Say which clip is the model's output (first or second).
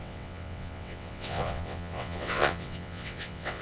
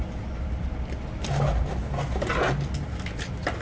first